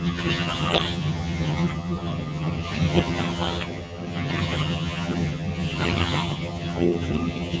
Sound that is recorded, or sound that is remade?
remade